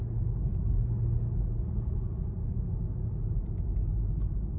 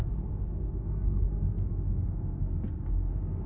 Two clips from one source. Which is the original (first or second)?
first